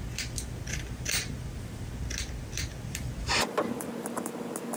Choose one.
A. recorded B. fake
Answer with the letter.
A